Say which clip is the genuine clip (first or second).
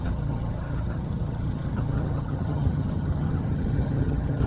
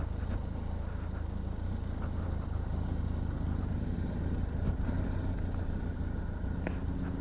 second